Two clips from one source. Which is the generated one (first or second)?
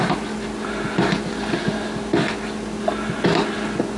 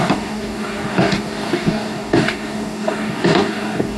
second